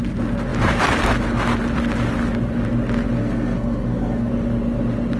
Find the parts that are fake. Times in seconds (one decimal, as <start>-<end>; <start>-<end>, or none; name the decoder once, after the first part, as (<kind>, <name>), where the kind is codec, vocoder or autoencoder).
3.2-4.3 (codec, SNAC)